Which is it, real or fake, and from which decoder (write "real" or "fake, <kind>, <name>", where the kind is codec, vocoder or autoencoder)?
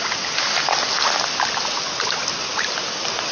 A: real